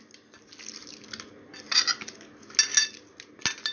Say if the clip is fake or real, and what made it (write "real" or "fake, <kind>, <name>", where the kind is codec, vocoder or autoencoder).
real